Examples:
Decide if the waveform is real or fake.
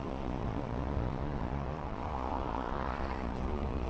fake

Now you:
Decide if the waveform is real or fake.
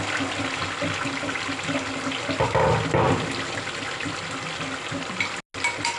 real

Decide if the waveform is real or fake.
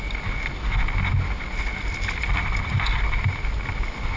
real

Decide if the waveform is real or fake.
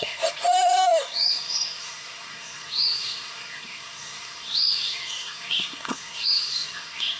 fake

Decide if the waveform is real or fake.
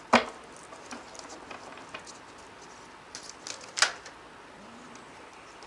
real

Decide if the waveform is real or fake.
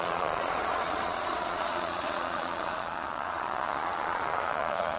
fake